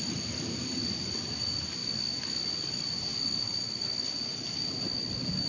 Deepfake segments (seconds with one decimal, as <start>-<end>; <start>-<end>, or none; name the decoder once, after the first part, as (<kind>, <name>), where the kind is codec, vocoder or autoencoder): none